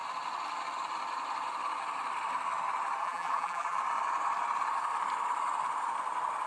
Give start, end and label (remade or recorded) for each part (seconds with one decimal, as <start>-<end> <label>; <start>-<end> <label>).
0.0-3.0 recorded; 3.0-3.8 remade; 3.8-6.5 recorded